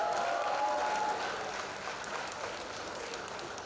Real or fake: real